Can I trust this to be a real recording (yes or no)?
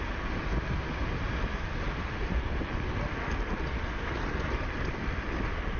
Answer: yes